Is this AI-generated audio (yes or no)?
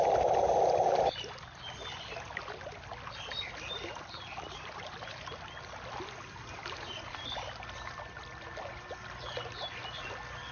no